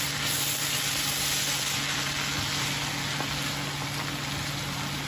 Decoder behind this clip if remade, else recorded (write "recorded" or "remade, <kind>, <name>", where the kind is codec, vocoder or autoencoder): recorded